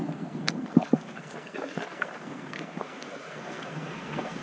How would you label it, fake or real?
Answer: fake